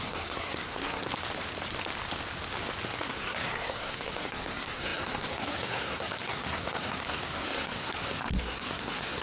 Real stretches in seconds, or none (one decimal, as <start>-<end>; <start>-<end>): 1.1-3.0